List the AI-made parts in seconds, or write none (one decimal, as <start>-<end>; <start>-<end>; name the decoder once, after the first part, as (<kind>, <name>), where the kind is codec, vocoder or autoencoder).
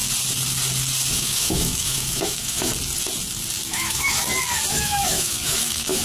1.1-2.7 (autoencoder, DAC-VAE); 3.7-4.2; 4.7-6.0